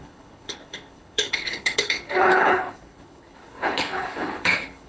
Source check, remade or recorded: remade